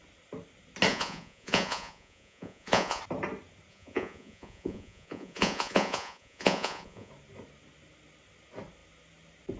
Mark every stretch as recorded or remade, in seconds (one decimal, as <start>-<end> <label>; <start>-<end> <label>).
0.0-0.9 recorded; 0.9-3.0 remade; 3.0-3.7 recorded; 3.7-7.1 remade; 7.1-9.6 recorded